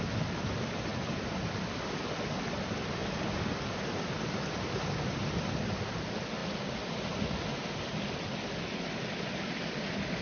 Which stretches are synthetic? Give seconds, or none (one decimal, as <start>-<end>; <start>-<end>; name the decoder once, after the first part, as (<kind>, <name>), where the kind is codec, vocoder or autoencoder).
0.0-0.9 (vocoder, BigVGAN v2); 2.1-3.0; 3.6-6.4